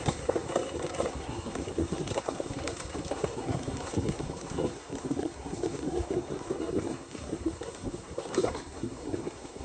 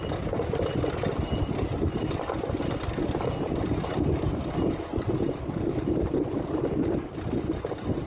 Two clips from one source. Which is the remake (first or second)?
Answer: first